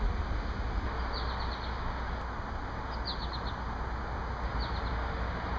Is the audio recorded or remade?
recorded